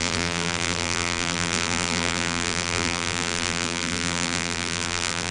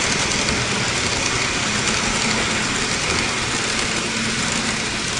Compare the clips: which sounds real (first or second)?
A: second